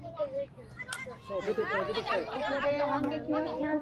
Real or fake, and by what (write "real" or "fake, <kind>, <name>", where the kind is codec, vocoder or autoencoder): fake, vocoder, BigVGAN v2